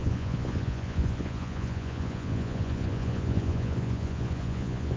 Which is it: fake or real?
fake